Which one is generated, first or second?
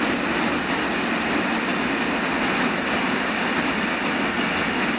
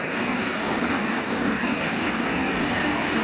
second